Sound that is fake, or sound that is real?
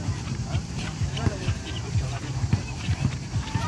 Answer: fake